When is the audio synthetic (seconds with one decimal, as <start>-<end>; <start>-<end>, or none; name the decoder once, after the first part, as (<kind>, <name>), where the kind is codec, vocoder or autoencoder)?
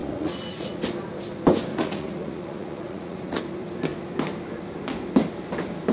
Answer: 0.0-0.8 (vocoder, Vocos); 1.7-3.4